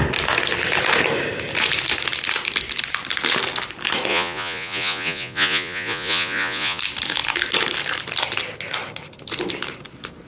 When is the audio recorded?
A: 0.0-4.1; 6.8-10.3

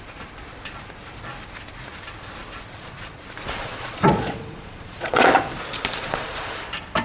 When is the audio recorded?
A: 0.0-2.7; 3.2-3.6; 5.6-6.0; 6.6-7.0

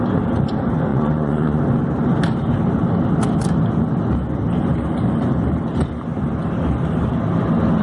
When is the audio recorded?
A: 0.0-0.9; 1.6-7.8